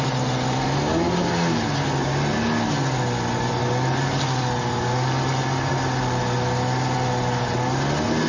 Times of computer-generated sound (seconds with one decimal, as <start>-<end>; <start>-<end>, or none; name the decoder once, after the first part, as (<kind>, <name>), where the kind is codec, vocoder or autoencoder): none